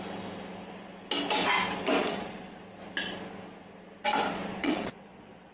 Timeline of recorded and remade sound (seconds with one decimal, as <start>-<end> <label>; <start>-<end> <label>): 0.0-2.0 recorded; 2.0-2.6 remade; 2.6-4.6 recorded; 4.6-5.5 remade